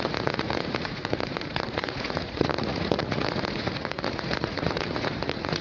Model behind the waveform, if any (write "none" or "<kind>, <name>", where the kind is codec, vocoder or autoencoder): vocoder, Vocos